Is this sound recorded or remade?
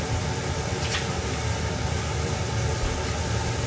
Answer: recorded